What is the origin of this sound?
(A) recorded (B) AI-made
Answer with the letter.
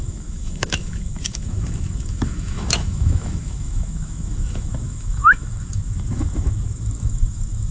B